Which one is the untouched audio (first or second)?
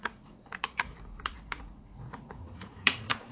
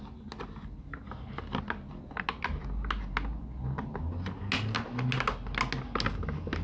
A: second